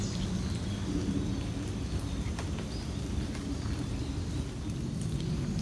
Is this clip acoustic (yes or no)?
yes